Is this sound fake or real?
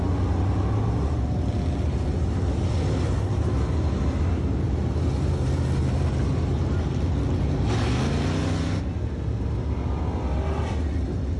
real